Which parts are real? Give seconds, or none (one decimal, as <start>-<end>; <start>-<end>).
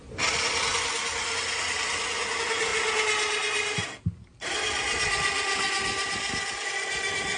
0.0-7.4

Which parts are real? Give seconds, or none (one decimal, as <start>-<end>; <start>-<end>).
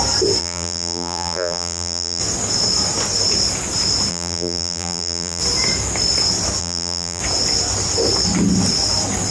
0.0-0.4; 2.2-4.1; 5.4-6.6; 7.2-9.3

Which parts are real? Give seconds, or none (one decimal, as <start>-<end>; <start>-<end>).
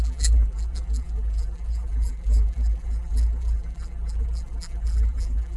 none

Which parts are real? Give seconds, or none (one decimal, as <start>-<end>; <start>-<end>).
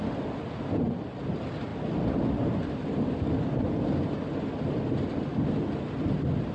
0.0-6.5